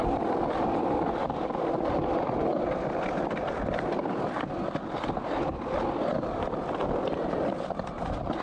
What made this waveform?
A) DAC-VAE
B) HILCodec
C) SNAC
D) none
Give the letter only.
D